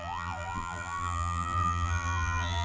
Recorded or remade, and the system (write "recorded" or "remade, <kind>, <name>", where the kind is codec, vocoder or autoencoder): remade, vocoder, BigVGAN v2